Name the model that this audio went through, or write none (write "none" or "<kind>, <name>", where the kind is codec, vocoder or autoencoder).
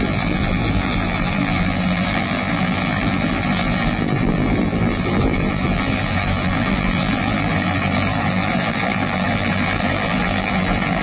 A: vocoder, BigVGAN v2